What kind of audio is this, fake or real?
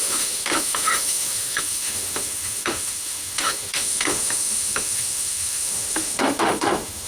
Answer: fake